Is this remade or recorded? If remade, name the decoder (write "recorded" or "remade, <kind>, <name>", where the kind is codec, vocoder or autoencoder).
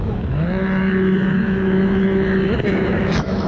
remade, autoencoder, DAC-VAE